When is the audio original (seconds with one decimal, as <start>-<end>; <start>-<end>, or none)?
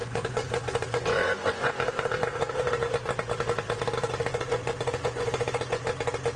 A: 1.7-4.3; 5.8-6.4